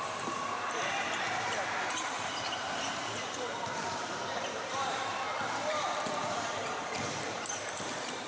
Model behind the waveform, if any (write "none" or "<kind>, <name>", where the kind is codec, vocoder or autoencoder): vocoder, BigVGAN v2